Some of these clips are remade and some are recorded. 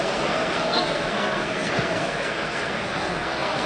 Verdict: remade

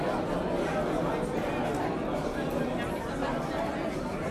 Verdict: recorded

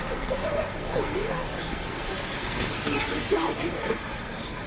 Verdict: remade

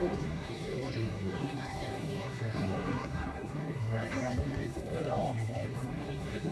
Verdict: remade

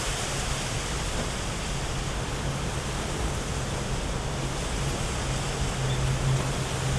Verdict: recorded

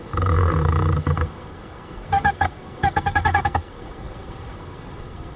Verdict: remade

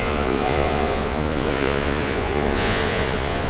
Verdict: remade